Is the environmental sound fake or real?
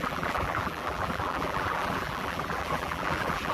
fake